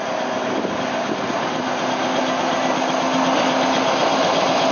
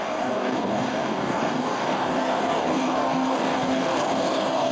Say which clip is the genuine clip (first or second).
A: first